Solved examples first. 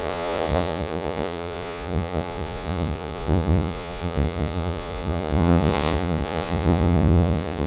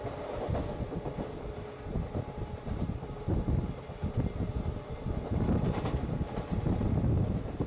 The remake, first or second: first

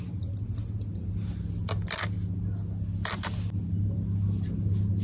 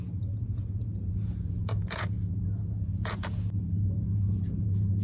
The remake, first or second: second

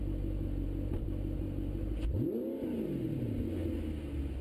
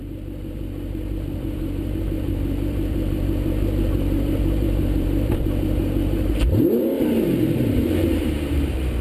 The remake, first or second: second